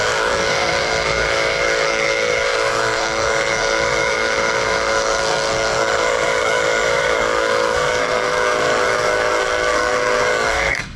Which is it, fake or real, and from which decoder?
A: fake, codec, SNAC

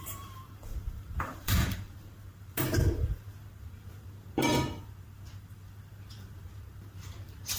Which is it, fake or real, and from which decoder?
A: fake, vocoder, BigVGAN v2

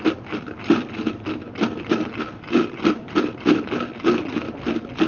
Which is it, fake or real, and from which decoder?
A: real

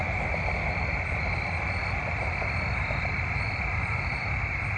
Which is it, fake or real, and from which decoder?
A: real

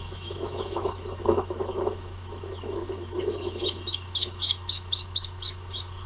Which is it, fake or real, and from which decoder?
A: fake, autoencoder, DAC-VAE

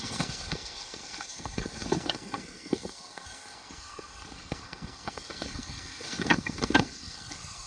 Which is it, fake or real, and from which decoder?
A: fake, codec, SNAC